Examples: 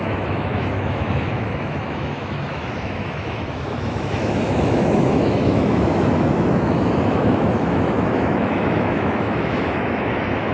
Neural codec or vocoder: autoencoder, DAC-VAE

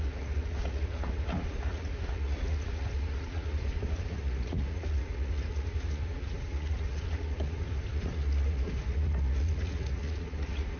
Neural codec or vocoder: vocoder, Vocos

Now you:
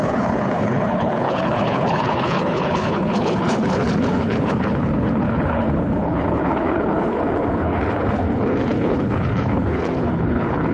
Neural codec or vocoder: codec, HILCodec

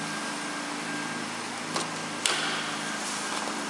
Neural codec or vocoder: none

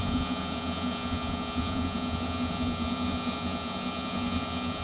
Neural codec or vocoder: vocoder, Vocos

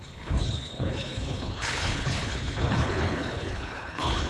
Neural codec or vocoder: codec, HILCodec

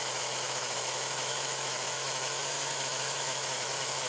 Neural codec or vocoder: autoencoder, DAC-VAE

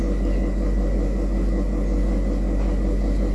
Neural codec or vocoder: none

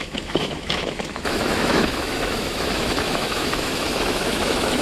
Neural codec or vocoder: autoencoder, DAC-VAE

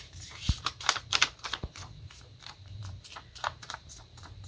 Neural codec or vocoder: vocoder, BigVGAN v2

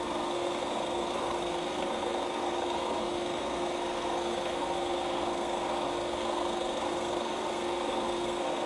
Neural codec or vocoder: codec, SNAC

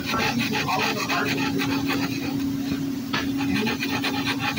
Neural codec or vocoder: none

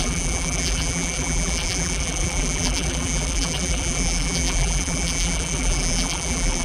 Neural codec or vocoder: vocoder, BigVGAN v2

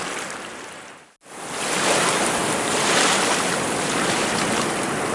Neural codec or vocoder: none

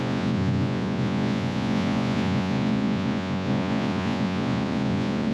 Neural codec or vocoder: vocoder, Vocos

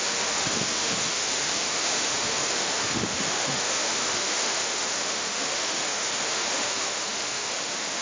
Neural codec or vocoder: autoencoder, DAC-VAE